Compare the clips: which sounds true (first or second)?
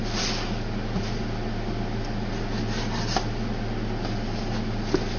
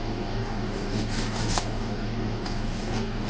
first